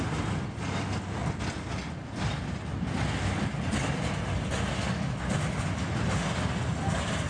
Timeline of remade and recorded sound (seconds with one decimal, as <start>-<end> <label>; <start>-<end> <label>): 0.0-7.3 recorded